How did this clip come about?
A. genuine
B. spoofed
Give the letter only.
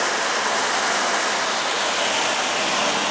A